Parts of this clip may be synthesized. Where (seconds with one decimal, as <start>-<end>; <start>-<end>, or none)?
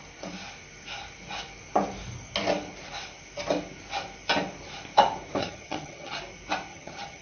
5.4-6.2; 6.7-7.2